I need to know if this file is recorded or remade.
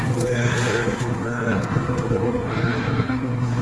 remade